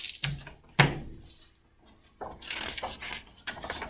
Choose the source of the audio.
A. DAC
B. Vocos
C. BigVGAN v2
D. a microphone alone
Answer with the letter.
D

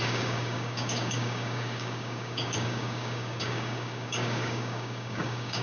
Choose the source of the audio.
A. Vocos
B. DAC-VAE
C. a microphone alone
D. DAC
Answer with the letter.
D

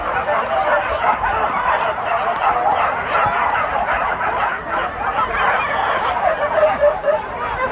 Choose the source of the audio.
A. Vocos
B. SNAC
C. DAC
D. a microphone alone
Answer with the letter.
D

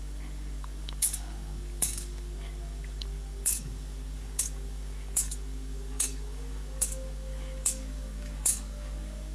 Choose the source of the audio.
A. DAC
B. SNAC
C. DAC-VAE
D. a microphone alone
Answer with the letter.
A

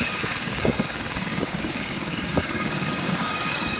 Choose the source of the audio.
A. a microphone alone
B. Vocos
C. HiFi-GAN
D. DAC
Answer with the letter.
D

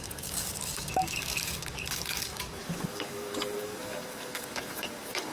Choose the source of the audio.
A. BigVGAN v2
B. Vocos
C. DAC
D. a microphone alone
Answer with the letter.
C